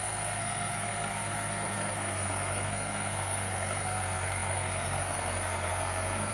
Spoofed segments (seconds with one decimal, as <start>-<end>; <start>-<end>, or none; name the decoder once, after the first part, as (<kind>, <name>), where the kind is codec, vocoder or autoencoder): 0.0-6.3 (codec, SNAC)